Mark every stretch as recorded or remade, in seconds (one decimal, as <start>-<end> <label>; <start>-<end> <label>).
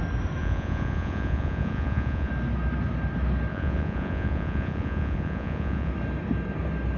0.0-0.4 recorded; 0.4-2.3 remade; 2.3-3.5 recorded; 3.5-5.9 remade; 5.9-7.0 recorded